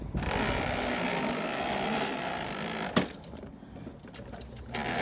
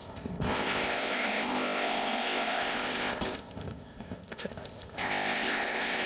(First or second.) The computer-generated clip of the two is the second